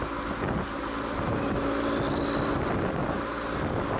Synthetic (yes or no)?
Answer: no